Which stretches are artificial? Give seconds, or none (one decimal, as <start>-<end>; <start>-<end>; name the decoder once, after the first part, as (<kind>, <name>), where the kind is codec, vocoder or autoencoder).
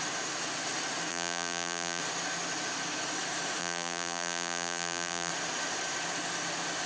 1.1-2.0 (vocoder, BigVGAN v2); 3.6-5.3